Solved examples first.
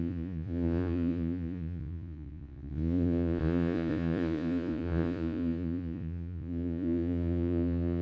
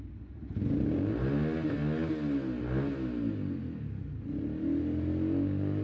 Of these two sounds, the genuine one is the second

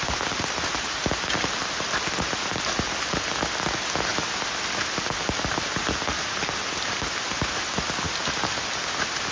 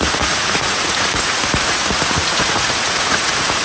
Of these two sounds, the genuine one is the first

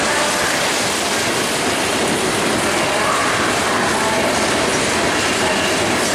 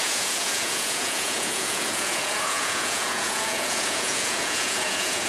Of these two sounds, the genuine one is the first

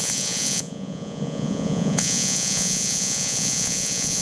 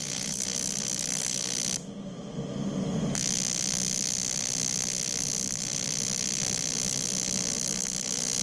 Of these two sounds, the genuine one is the second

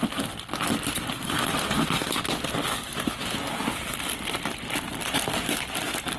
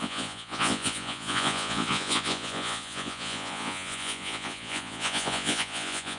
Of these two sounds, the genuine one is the first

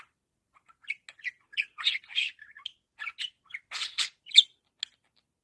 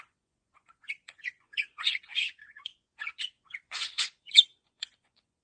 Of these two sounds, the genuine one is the first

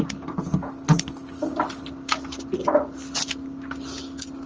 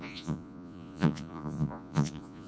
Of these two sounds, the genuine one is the first